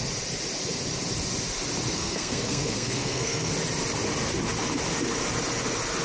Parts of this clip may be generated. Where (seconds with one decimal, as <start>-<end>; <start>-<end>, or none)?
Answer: 1.9-3.5